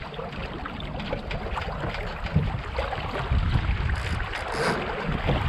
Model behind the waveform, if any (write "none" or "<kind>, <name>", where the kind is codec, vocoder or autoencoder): none